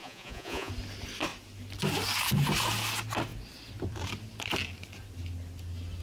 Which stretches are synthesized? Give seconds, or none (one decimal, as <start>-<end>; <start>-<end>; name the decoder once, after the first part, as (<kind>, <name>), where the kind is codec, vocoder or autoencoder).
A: 0.0-0.7 (vocoder, Vocos)

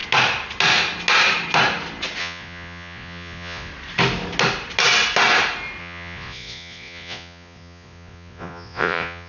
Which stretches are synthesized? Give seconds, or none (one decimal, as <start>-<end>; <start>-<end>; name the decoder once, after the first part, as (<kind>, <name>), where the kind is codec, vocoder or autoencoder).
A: 2.2-3.7 (vocoder, Vocos); 5.8-9.3